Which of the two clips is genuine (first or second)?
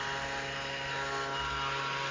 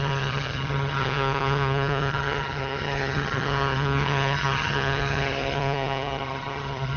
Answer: first